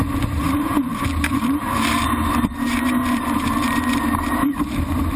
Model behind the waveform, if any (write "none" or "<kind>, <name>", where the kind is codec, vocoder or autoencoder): vocoder, BigVGAN v2